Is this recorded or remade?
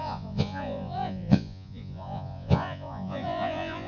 remade